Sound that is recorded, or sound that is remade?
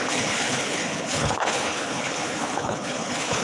remade